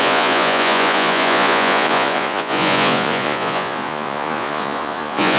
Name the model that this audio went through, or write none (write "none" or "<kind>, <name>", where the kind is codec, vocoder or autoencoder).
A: vocoder, Vocos